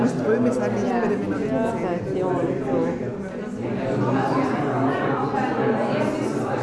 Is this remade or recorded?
recorded